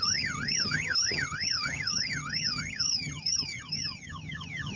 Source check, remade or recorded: remade